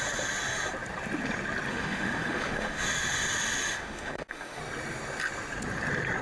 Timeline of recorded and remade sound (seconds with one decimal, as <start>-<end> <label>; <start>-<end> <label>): 0.0-1.7 recorded; 1.7-3.1 remade; 3.1-3.6 recorded; 3.6-4.6 remade; 4.6-6.2 recorded